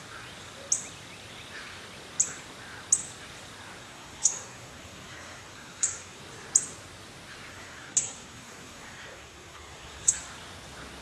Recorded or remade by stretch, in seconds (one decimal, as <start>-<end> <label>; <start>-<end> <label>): 0.0-3.8 recorded; 3.8-6.2 remade; 6.2-7.5 recorded; 7.5-10.1 remade; 10.1-11.0 recorded